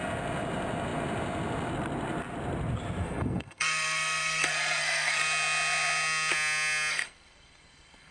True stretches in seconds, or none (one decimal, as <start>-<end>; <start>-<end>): 0.0-3.0; 5.2-6.9